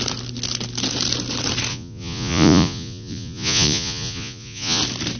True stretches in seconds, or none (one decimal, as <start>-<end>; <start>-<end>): 0.0-1.7; 4.8-5.2